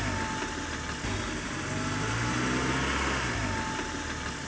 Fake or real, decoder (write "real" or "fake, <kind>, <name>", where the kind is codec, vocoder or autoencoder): real